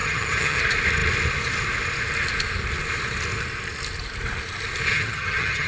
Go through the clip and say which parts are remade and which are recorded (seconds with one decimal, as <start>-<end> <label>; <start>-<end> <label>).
0.0-0.6 remade; 0.6-4.9 recorded; 4.9-5.7 remade